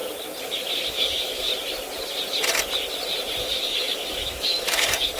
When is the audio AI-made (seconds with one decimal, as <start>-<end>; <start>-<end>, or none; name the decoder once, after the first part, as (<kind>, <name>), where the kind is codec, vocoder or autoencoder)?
0.9-1.5 (codec, DAC); 3.4-5.2